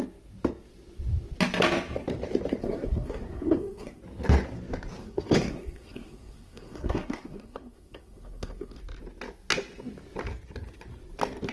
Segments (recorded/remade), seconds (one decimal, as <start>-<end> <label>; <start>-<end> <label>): 0.0-2.6 recorded; 2.6-4.0 remade; 4.0-5.0 recorded; 5.0-8.8 remade; 8.8-11.5 recorded